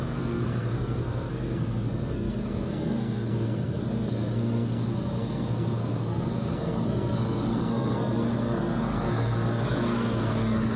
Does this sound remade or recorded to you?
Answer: remade